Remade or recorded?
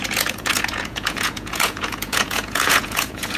remade